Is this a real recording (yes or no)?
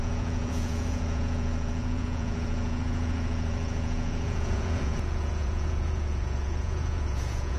no